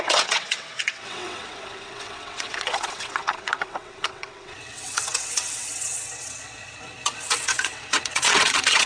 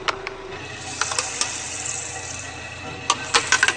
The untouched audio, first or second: second